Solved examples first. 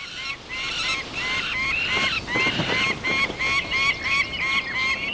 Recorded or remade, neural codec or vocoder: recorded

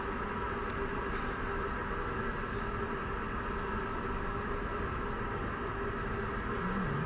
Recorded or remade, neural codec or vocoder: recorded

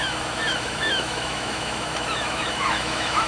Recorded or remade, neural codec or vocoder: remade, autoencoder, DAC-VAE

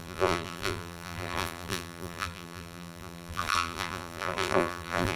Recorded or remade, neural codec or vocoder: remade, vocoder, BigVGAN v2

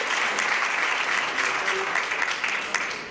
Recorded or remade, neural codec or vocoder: recorded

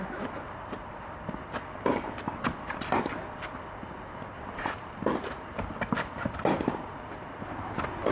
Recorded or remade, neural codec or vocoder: remade, vocoder, BigVGAN v2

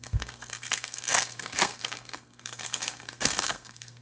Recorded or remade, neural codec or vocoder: remade, codec, SNAC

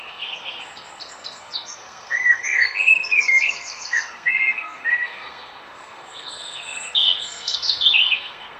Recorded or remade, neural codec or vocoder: remade, codec, SNAC